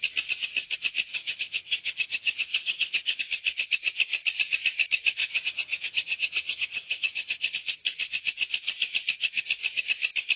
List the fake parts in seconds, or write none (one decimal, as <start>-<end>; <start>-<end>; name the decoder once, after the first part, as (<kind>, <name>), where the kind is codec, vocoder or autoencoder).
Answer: 1.1-3.2 (vocoder, HiFi-GAN); 5.2-7.5